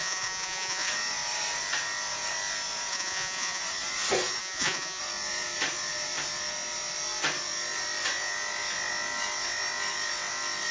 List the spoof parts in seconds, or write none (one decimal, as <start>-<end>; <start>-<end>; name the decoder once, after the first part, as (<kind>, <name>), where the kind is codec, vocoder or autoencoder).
0.0-0.9 (vocoder, Vocos); 2.9-3.6; 4.4-5.0